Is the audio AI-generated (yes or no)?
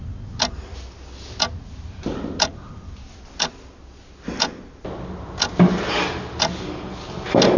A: no